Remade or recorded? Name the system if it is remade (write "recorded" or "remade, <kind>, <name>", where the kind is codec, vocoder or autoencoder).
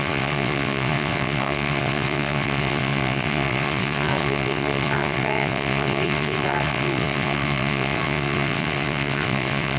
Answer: remade, vocoder, WaveNeXt